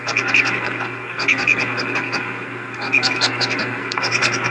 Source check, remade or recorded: remade